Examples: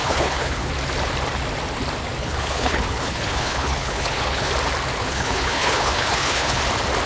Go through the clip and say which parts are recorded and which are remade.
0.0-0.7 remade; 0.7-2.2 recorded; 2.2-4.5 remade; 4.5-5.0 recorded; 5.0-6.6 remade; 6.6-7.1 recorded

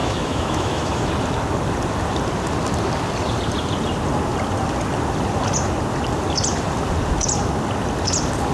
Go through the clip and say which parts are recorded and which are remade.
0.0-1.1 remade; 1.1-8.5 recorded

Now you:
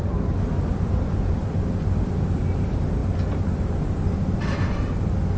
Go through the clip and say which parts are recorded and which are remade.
0.0-5.4 recorded